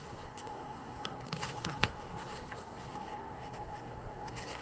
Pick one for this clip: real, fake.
fake